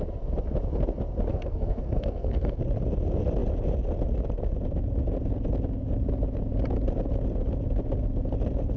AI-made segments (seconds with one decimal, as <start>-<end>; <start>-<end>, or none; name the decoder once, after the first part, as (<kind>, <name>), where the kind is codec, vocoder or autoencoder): 1.3-2.6 (codec, SNAC)

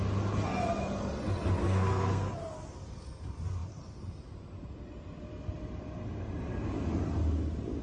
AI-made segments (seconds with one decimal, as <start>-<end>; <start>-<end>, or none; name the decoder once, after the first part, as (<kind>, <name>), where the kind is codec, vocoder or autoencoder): 1.6-2.3 (codec, SNAC)